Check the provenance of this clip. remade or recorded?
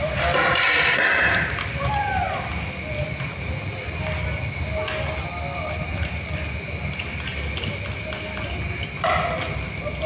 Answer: recorded